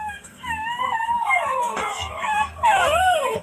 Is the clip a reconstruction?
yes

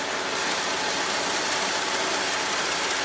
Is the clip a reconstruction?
no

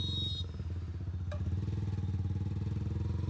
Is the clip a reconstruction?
no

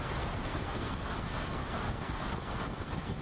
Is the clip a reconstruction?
yes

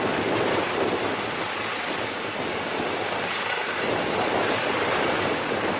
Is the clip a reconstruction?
no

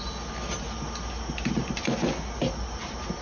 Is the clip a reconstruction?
no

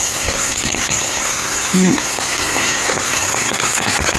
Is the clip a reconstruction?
yes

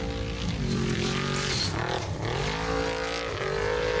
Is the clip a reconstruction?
no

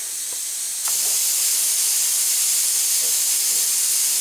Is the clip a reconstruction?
no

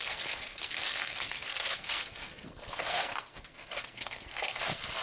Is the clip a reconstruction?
yes